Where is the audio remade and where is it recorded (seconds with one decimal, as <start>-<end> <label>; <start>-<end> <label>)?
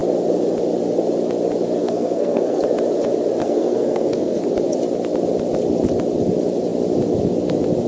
0.0-1.8 recorded; 1.8-2.6 remade; 2.6-3.4 recorded; 3.4-4.4 remade; 4.4-7.9 recorded